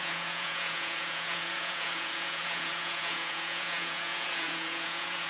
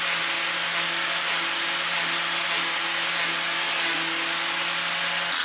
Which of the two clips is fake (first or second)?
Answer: first